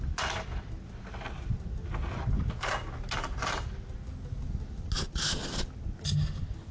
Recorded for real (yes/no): yes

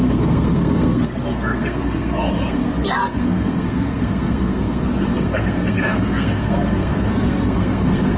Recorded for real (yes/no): no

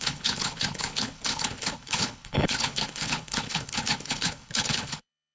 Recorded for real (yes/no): no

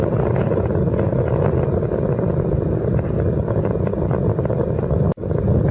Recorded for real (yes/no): no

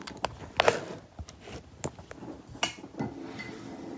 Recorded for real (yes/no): yes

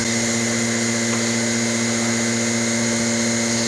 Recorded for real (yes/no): yes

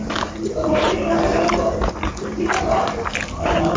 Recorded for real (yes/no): yes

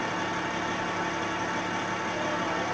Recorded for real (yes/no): yes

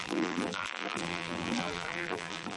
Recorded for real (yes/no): no